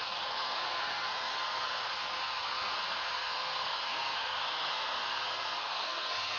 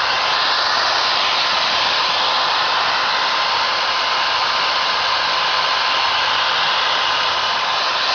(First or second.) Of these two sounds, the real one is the second